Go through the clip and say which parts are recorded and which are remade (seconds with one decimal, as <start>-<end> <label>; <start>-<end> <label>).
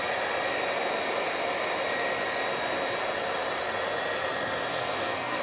0.0-4.7 recorded; 4.7-5.4 remade